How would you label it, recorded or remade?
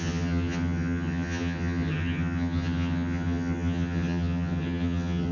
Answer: remade